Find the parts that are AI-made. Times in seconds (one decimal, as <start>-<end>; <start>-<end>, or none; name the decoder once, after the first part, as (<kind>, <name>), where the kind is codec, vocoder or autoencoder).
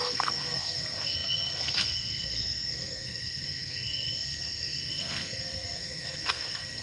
0.0-6.8 (codec, SNAC)